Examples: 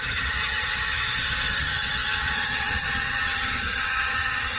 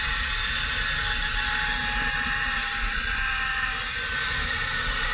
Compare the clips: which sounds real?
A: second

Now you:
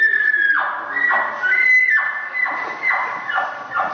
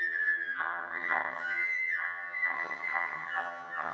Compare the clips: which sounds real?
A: first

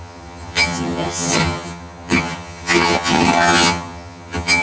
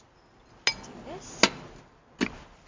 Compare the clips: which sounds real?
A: second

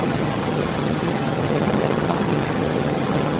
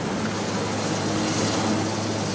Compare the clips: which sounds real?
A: second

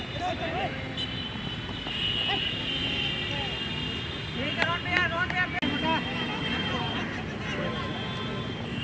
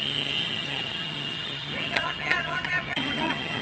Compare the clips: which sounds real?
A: first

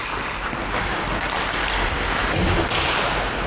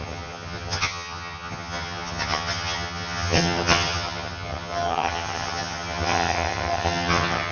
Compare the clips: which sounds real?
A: first